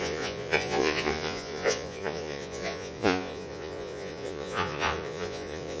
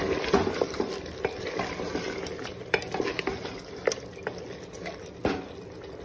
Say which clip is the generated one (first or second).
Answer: first